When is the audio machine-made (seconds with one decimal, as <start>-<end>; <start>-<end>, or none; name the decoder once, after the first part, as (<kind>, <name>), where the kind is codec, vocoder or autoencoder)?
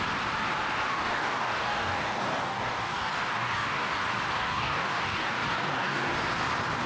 0.9-4.0 (codec, DAC); 4.4-6.1